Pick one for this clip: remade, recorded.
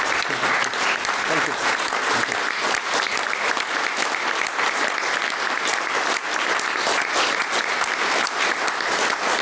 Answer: recorded